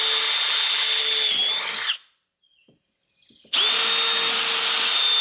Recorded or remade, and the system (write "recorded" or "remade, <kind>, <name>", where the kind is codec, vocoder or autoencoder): recorded